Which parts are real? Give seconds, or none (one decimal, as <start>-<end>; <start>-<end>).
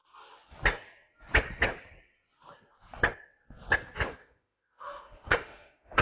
0.0-4.2